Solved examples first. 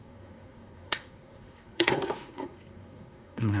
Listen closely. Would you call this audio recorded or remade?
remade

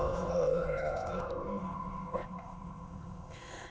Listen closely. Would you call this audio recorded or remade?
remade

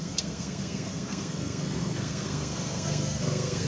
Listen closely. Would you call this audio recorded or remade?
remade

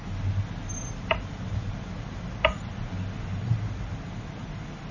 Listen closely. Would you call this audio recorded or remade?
recorded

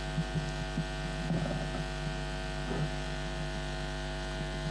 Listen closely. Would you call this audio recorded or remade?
recorded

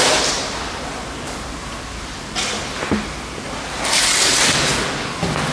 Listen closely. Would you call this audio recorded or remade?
recorded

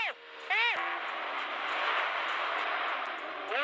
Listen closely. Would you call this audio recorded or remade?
recorded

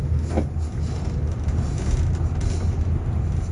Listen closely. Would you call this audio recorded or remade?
recorded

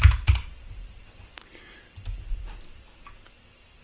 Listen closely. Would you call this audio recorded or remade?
recorded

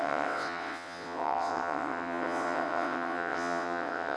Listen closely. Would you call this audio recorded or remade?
remade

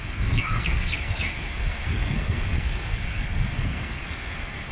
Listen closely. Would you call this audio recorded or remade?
remade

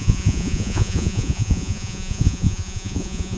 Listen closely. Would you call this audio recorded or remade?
remade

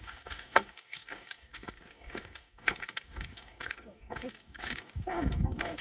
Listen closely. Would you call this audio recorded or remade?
remade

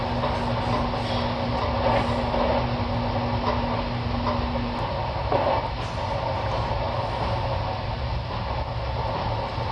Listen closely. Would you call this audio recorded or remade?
recorded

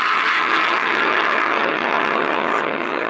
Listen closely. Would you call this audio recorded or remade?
remade